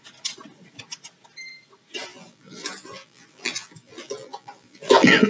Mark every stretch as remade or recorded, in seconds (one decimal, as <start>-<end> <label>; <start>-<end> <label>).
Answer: 0.0-2.1 recorded; 2.1-5.3 remade